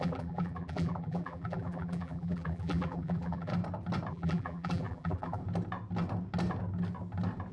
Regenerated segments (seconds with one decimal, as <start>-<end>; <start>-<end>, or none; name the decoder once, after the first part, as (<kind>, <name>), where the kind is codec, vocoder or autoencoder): 0.0-3.5 (vocoder, BigVGAN v2); 4.1-5.4